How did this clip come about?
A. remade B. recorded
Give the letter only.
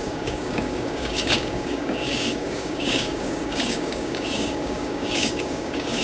A